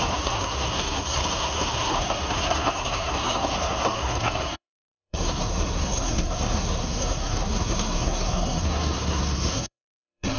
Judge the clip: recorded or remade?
remade